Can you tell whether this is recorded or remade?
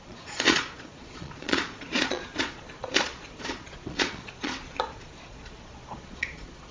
remade